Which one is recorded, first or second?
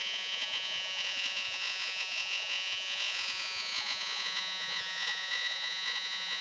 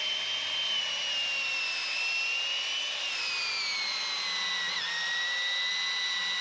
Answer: second